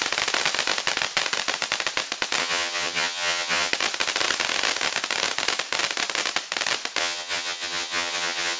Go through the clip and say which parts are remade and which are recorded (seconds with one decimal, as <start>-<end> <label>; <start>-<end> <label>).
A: 0.0-2.4 recorded; 2.4-3.7 remade; 3.7-7.0 recorded; 7.0-8.6 remade